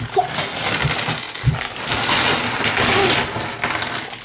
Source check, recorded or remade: recorded